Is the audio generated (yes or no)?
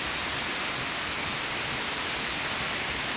no